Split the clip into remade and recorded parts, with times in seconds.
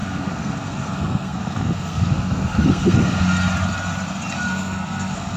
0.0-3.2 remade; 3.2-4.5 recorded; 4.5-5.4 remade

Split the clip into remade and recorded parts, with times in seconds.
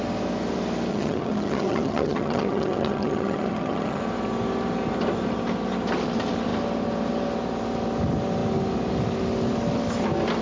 0.0-0.9 recorded; 0.9-4.0 remade; 4.0-10.4 recorded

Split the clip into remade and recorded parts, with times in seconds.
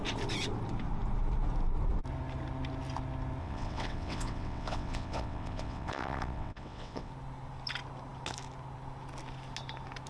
0.0-3.4 recorded; 3.4-7.1 remade; 7.1-10.1 recorded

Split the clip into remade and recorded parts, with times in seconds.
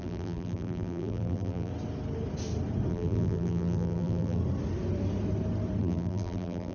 0.0-1.7 remade; 1.7-2.9 recorded; 2.9-4.4 remade; 4.4-5.8 recorded; 5.8-6.7 remade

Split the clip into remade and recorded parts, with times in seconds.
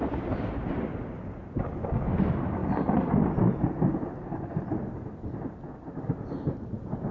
0.0-7.1 recorded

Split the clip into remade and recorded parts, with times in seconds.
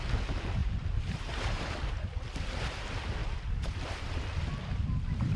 0.0-0.6 recorded; 0.6-2.8 remade; 2.8-3.2 recorded; 3.2-4.0 remade; 4.0-5.4 recorded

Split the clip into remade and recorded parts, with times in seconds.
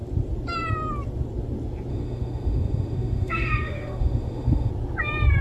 0.0-1.9 recorded; 1.9-4.7 remade; 4.7-5.4 recorded